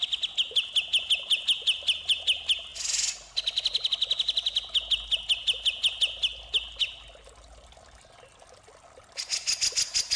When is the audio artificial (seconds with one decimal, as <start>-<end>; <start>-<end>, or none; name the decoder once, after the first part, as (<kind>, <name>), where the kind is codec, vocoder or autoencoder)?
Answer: none